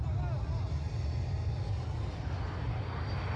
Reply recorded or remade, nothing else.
recorded